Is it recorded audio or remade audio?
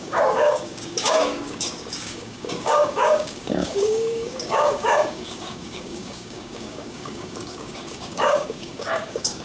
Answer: remade